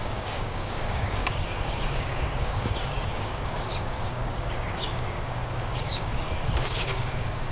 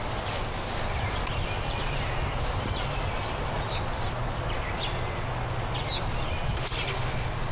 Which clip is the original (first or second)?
second